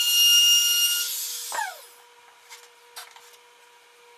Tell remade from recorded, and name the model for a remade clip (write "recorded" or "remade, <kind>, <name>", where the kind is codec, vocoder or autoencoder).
recorded